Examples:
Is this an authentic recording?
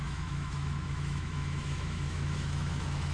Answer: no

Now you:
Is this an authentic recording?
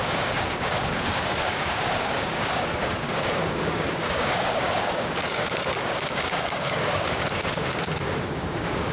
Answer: no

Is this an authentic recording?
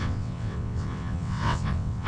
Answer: no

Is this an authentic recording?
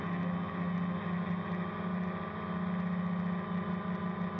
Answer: yes